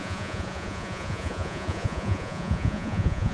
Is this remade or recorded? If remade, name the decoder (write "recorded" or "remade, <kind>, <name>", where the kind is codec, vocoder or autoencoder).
remade, vocoder, Vocos